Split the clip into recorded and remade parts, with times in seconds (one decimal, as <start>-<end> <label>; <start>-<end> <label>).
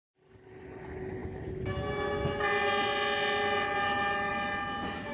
0.0-5.1 recorded